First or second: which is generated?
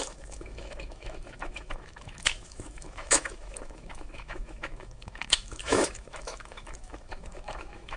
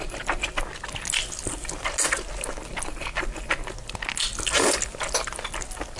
first